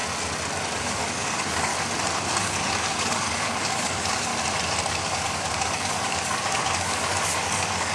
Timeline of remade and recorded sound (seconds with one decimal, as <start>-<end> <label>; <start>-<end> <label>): 0.0-0.8 recorded; 0.8-1.7 remade; 1.7-2.4 recorded; 2.4-4.3 remade; 4.3-4.9 recorded; 4.9-7.9 remade